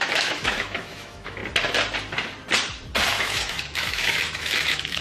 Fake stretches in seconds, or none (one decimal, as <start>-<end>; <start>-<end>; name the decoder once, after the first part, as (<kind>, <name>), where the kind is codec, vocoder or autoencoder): 0.0-1.4 (autoencoder, DAC-VAE); 3.1-5.0